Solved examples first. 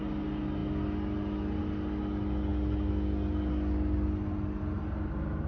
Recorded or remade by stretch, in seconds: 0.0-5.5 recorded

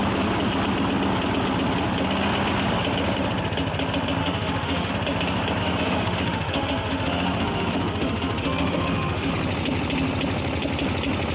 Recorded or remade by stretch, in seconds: 0.0-4.2 recorded; 4.2-4.9 remade; 4.9-5.6 recorded; 5.6-9.3 remade; 9.3-11.3 recorded